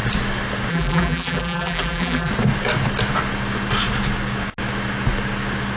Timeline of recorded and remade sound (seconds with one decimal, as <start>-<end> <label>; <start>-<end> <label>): 0.0-0.7 recorded; 0.7-2.3 remade; 2.3-5.8 recorded